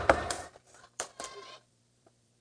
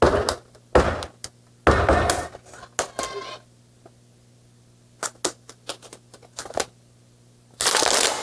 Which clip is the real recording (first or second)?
second